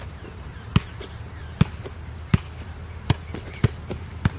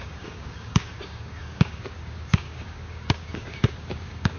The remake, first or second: second